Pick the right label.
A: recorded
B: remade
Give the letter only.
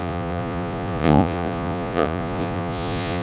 B